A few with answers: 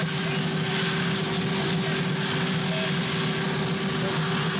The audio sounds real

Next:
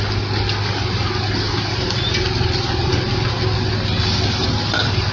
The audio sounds real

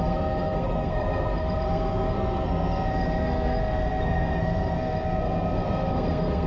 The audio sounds fake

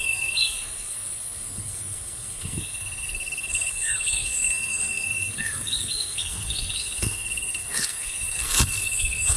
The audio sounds fake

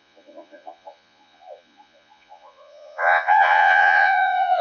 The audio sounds fake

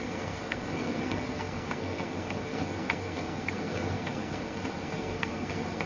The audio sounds fake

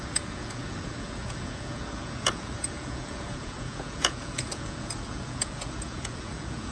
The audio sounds fake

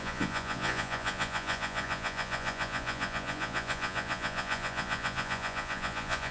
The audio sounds fake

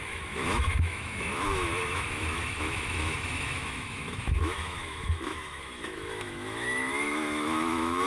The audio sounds fake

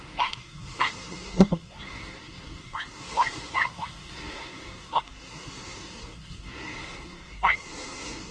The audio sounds fake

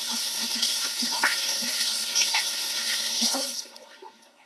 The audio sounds fake